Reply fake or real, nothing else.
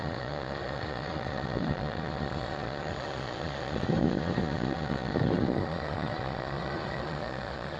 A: fake